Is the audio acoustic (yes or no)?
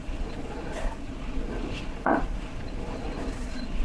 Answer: no